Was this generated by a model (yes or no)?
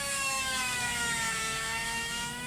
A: yes